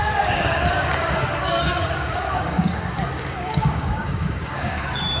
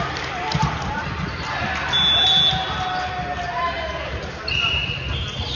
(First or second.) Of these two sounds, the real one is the second